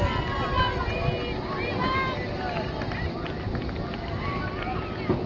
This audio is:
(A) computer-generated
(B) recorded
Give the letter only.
B